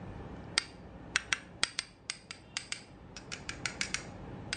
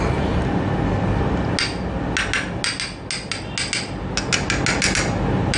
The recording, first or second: second